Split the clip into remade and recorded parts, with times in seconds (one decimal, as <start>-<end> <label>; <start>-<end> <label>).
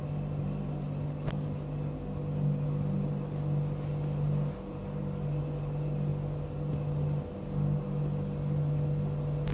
0.0-9.5 recorded